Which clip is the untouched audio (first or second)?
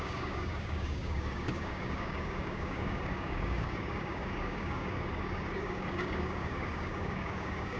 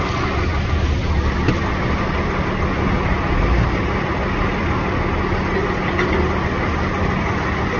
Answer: second